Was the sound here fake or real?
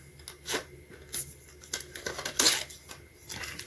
real